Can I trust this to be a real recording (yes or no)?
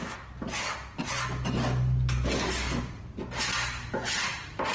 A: yes